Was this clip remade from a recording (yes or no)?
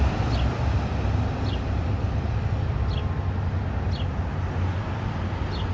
no